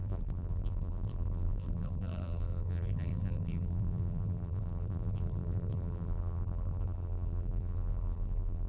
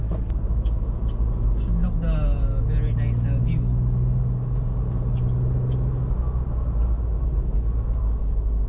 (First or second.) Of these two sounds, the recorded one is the second